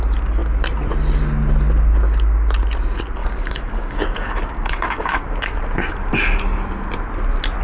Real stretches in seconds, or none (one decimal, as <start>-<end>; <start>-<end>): 0.0-3.2; 5.2-7.6

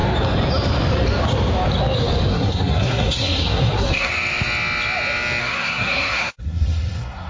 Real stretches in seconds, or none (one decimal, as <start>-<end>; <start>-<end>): 0.0-2.3; 4.1-5.4

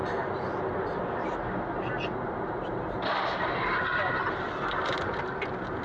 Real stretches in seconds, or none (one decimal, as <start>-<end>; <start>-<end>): 0.0-5.8

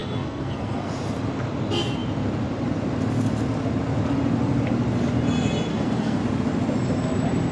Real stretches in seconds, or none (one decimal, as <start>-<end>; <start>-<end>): 0.9-5.7; 6.2-7.5

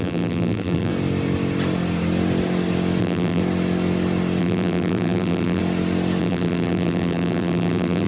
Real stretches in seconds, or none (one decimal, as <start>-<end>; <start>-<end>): 0.9-3.0; 3.4-4.4; 5.6-6.2